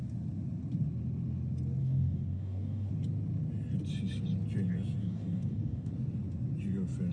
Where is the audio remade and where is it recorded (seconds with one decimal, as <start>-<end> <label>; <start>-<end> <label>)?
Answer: 0.0-1.8 recorded; 1.8-2.9 remade; 2.9-5.0 recorded; 5.0-5.9 remade; 5.9-7.1 recorded